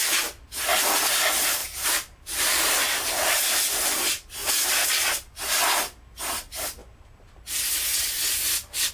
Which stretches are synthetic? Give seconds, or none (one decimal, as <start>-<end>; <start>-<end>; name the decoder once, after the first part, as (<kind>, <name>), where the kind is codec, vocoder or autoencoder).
1.6-3.4 (vocoder, BigVGAN v2); 4.4-5.0